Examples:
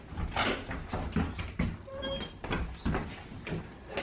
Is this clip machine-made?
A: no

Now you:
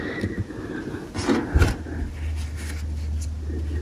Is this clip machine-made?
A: no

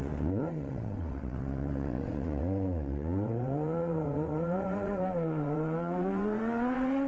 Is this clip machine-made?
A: yes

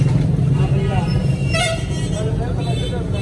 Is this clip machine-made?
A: no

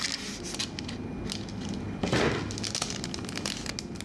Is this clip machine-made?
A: no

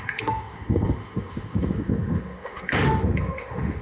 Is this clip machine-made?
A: yes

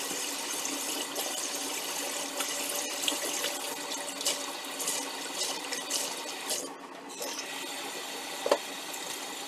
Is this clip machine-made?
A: no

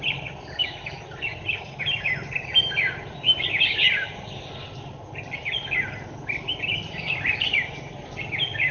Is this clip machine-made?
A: no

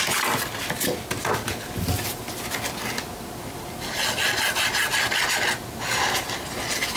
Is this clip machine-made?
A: no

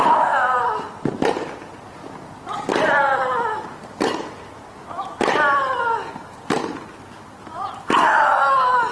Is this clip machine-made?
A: no